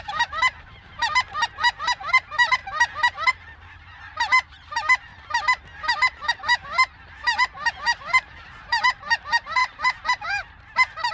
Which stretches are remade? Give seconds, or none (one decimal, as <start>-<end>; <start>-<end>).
0.0-2.6; 3.3-5.1; 5.8-11.1